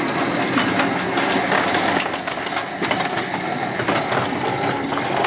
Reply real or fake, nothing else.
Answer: real